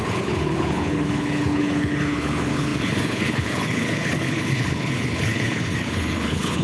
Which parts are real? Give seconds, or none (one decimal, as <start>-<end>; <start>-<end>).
none

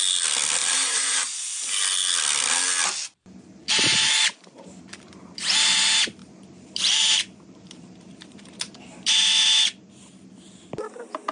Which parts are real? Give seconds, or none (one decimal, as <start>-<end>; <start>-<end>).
0.0-0.6; 1.7-3.6; 4.8-6.2; 9.1-11.3